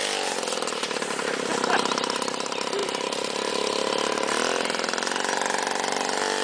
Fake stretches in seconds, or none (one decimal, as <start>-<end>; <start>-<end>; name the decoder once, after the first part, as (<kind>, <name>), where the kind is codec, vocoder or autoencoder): none